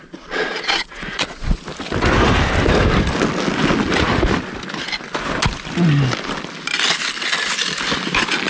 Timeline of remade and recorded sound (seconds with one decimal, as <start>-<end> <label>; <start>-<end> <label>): 0.0-1.6 remade; 1.6-8.5 recorded